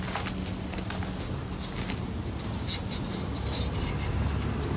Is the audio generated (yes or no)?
no